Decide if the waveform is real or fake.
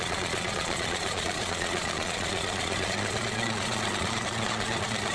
fake